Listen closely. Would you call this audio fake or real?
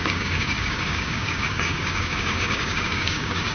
fake